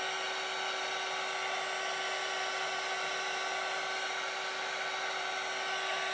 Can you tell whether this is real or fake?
real